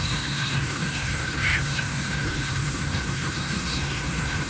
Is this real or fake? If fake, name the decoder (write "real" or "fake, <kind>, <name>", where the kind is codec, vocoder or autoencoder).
fake, codec, SNAC